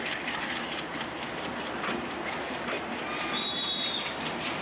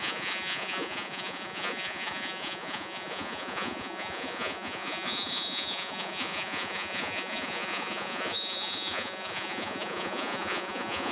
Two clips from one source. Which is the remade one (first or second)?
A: second